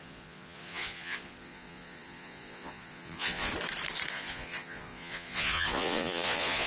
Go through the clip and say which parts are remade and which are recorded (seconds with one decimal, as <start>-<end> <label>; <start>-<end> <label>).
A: 0.0-3.5 remade; 3.5-4.1 recorded; 4.1-6.7 remade